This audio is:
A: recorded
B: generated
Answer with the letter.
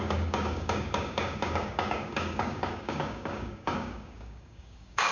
B